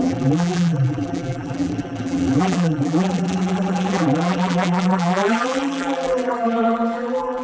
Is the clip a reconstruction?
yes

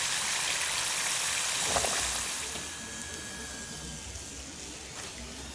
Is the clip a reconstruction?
no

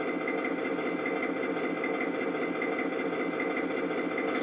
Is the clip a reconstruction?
no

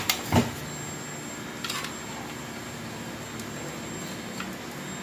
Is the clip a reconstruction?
no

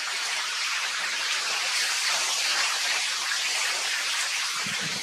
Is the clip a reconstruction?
yes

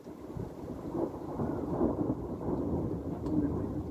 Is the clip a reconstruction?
no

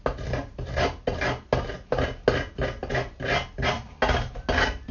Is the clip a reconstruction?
no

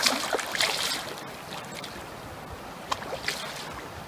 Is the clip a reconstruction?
no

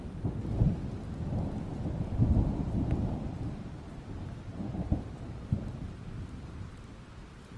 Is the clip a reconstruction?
yes